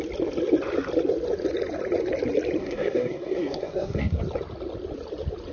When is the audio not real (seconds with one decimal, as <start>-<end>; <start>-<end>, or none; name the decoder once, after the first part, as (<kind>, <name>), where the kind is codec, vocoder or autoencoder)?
2.6-4.2 (codec, SNAC)